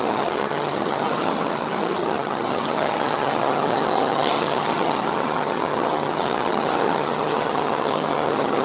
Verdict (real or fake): fake